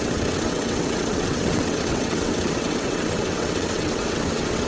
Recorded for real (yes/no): no